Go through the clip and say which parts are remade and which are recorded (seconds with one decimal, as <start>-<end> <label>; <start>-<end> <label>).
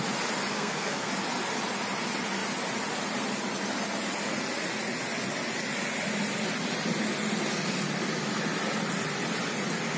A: 0.0-0.5 recorded; 0.5-1.1 remade; 1.1-10.0 recorded